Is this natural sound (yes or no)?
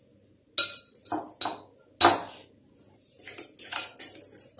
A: yes